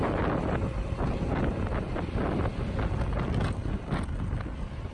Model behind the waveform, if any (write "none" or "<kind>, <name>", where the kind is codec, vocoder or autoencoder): none